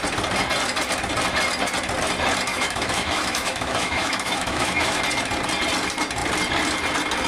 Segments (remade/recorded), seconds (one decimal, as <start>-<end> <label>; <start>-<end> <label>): 0.0-2.5 recorded; 2.5-5.0 remade; 5.0-7.3 recorded